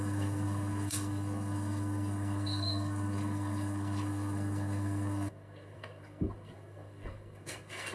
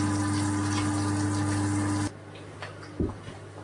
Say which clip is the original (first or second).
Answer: second